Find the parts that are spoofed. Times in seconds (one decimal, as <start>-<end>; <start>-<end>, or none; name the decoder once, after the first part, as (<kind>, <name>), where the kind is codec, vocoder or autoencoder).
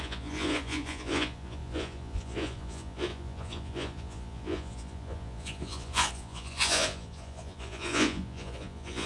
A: 0.0-9.1 (vocoder, Vocos)